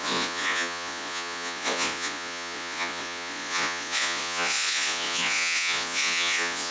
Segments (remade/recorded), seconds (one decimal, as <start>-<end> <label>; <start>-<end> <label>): 0.0-6.7 remade